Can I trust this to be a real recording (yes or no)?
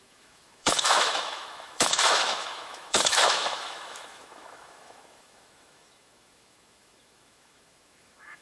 no